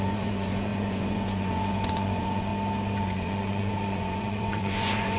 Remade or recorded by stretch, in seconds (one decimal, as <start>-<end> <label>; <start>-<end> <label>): 0.0-2.5 remade; 2.5-3.0 recorded; 3.0-5.2 remade